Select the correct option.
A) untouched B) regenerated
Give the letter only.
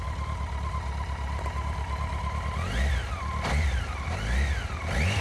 A